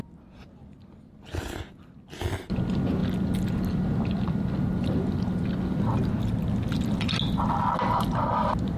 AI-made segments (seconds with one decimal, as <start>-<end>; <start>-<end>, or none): none